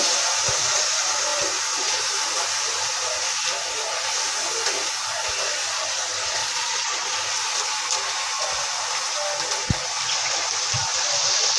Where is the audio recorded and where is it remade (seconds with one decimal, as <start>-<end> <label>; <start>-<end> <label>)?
0.0-6.4 recorded; 6.4-7.1 remade; 7.1-11.6 recorded

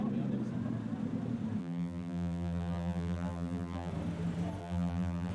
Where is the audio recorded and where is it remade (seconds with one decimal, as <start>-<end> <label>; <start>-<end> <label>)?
0.0-1.6 recorded; 1.6-3.9 remade; 3.9-4.6 recorded; 4.6-5.3 remade

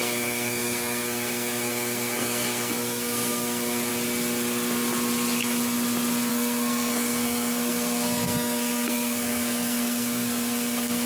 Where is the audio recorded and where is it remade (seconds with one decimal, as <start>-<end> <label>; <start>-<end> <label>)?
0.0-3.9 remade; 3.9-6.3 recorded; 6.3-11.1 remade

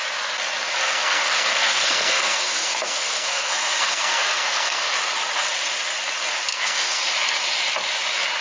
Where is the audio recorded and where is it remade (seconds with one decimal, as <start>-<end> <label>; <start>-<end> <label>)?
0.0-0.8 recorded; 0.8-4.9 remade; 4.9-6.5 recorded; 6.5-7.0 remade; 7.0-8.4 recorded

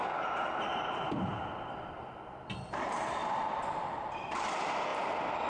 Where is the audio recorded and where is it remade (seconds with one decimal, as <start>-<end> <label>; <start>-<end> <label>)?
0.0-1.3 recorded; 1.3-1.9 remade; 1.9-3.2 recorded; 3.2-4.1 remade; 4.1-5.5 recorded

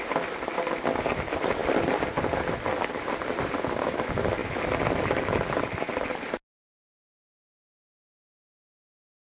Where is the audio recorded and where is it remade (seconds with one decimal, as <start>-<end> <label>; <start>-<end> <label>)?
0.0-9.3 recorded